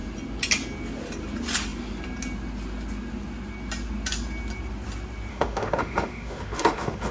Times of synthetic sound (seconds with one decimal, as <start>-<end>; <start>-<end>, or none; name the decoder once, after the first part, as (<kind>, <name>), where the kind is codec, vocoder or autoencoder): 5.3-7.1 (autoencoder, DAC-VAE)